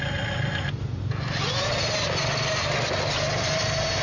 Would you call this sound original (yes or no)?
yes